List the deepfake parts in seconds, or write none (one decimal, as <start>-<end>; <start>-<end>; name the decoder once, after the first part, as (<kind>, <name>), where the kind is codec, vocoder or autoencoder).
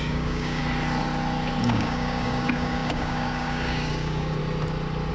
0.0-0.6 (codec, DAC); 1.6-4.4